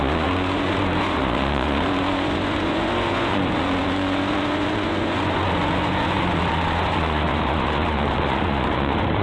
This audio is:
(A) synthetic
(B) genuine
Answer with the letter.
A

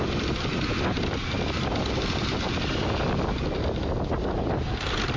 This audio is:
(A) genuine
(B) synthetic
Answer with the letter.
A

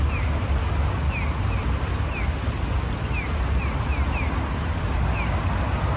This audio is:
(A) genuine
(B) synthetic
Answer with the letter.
A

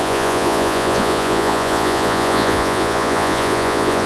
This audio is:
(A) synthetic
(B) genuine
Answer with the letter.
A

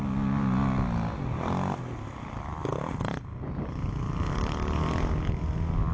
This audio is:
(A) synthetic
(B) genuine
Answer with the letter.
B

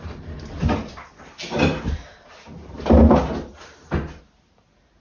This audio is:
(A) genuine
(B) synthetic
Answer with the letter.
A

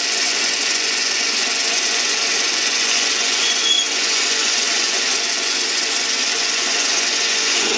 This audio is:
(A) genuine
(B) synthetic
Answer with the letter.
B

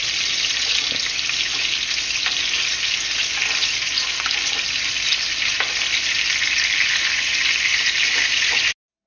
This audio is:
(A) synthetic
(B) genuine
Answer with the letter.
B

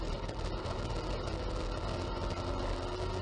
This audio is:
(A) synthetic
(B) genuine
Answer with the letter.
B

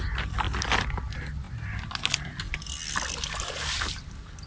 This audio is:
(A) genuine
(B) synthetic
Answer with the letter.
A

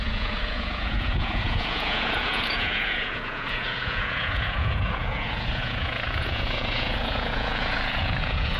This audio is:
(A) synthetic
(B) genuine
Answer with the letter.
A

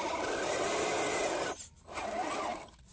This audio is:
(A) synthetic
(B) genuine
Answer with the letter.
B